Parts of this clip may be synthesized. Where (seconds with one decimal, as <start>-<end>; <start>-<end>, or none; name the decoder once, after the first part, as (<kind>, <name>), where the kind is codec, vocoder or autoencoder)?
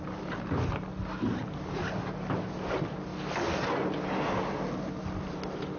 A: none